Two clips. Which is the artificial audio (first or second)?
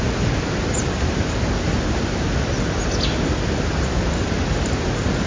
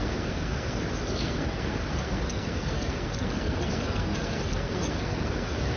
second